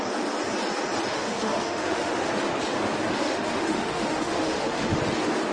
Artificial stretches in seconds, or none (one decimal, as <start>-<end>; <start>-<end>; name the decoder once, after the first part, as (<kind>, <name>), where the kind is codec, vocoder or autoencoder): 1.1-2.3 (autoencoder, DAC-VAE); 3.2-5.0